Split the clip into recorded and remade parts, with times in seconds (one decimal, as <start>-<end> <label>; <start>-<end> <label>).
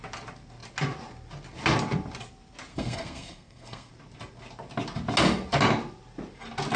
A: 0.0-2.7 recorded; 2.7-3.9 remade; 3.9-6.8 recorded